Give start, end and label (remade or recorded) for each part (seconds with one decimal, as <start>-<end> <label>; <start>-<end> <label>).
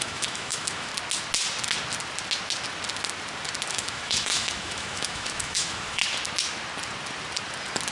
0.0-0.9 remade; 0.9-3.7 recorded; 3.7-6.0 remade; 6.0-7.9 recorded